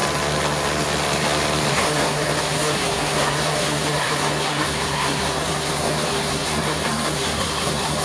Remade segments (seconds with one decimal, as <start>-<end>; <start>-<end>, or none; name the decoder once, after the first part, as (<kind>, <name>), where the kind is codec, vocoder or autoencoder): 1.7-8.0 (codec, SNAC)